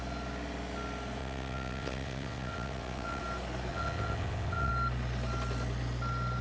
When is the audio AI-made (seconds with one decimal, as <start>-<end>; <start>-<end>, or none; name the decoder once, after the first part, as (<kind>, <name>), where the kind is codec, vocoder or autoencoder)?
1.2-3.2 (vocoder, WaveNeXt); 3.7-4.7

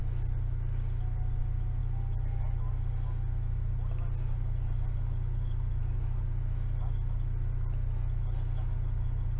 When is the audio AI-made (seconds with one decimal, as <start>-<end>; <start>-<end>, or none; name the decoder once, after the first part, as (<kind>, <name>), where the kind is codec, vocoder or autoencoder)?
none

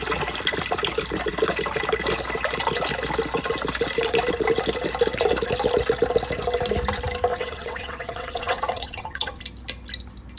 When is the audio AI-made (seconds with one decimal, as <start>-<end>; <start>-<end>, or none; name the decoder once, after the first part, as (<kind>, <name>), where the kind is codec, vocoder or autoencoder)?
7.3-9.4 (vocoder, WaveNeXt)

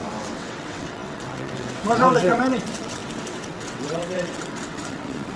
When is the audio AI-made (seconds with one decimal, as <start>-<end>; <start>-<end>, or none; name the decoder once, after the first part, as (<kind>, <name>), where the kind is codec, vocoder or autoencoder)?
0.0-5.4 (vocoder, WaveNeXt)

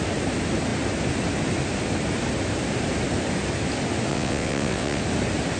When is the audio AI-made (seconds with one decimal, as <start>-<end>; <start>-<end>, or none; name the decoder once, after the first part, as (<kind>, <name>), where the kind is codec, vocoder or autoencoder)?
4.1-5.0 (vocoder, WaveNeXt)